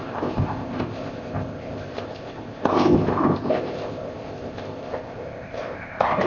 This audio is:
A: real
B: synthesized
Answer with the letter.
B